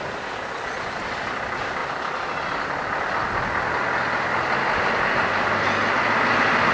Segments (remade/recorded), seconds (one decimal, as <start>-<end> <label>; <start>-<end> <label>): 0.0-6.7 recorded